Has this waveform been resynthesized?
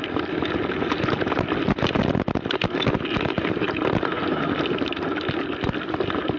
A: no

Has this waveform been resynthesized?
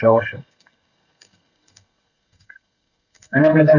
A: yes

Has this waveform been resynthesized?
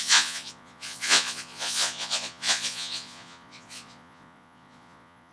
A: yes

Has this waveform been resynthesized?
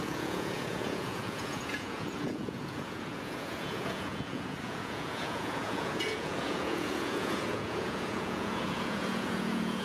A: yes